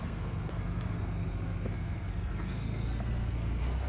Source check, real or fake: fake